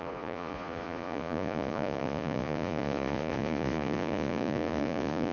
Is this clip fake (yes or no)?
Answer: yes